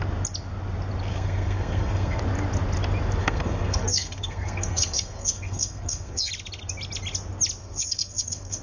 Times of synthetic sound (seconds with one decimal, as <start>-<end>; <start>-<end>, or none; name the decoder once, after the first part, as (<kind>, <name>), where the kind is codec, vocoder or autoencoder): 1.1-2.2 (codec, SNAC); 3.2-6.3; 7.6-8.6